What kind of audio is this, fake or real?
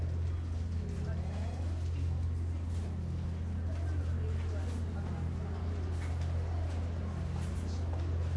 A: real